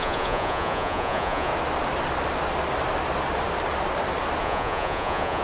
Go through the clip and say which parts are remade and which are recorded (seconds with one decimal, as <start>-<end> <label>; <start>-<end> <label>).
0.0-1.5 remade; 1.5-4.4 recorded; 4.4-5.4 remade

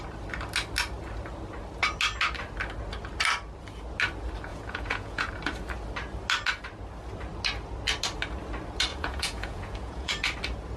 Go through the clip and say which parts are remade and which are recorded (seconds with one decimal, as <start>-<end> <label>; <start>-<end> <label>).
0.0-4.5 recorded; 4.5-5.3 remade; 5.3-8.9 recorded; 8.9-10.1 remade; 10.1-10.8 recorded